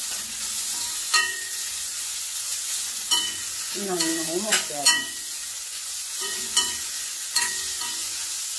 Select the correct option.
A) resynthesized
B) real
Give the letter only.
A